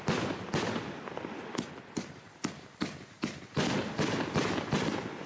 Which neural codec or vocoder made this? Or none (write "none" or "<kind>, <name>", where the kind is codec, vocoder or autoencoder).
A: none